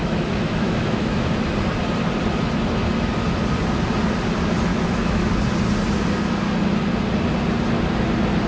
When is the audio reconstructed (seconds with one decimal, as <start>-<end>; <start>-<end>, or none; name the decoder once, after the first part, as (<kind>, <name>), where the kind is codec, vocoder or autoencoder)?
0.0-1.3 (autoencoder, DAC-VAE); 4.7-5.3

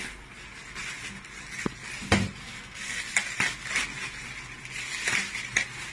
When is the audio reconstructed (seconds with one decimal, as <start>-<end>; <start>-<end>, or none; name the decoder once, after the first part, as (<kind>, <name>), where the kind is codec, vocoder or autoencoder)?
2.4-3.0 (codec, SNAC)

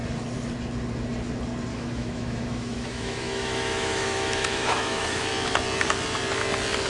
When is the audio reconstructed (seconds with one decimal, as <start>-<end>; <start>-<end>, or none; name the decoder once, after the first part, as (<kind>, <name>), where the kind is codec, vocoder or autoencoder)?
1.7-5.3 (autoencoder, DAC-VAE)

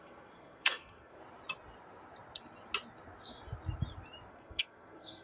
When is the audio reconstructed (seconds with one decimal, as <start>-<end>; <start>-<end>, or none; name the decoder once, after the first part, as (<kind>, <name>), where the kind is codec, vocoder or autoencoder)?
0.0-1.2 (codec, SNAC); 4.3-5.2

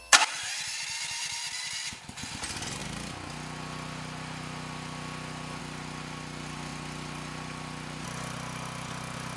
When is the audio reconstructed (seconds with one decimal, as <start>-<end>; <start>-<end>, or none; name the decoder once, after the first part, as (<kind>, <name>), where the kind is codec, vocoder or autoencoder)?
none